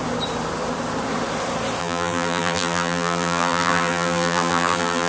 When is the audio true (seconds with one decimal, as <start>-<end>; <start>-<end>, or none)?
0.0-1.8